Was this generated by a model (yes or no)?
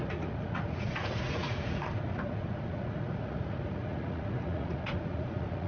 yes